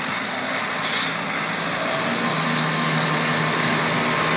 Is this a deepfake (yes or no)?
no